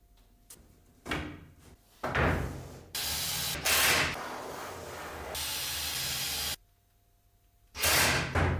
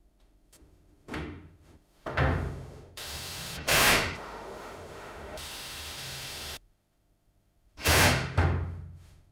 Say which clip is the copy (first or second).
second